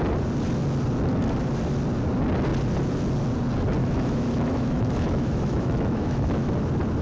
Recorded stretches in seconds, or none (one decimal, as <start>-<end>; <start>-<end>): 0.0-3.8; 6.5-7.0